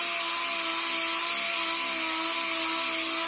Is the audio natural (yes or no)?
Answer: yes